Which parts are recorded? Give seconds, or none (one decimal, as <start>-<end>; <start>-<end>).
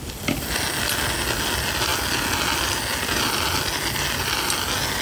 0.0-5.0